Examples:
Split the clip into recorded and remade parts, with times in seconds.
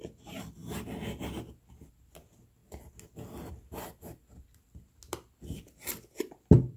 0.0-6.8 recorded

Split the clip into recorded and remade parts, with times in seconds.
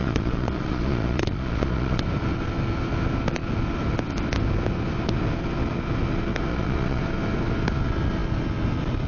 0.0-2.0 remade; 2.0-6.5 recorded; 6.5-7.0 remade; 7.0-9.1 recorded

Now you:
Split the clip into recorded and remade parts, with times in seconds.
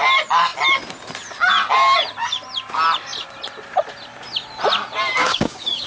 0.0-5.2 recorded; 5.2-5.9 remade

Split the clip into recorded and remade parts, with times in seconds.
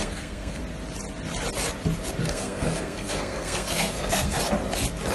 0.0-0.6 remade; 0.6-2.2 recorded; 2.2-4.4 remade; 4.4-5.1 recorded